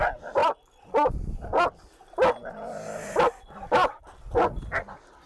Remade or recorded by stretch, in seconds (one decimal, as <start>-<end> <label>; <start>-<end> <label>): 0.0-5.3 recorded